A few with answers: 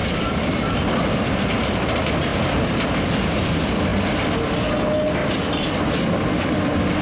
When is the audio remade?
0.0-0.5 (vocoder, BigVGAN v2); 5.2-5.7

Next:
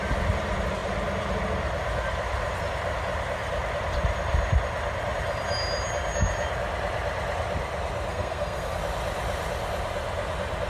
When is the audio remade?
8.1-8.8 (codec, SNAC)

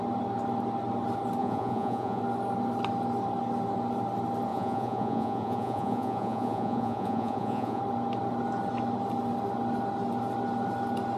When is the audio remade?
1.4-2.2 (vocoder, Vocos); 4.5-7.8